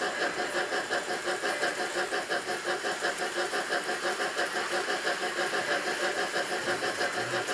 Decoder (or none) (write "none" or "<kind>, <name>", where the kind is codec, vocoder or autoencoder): none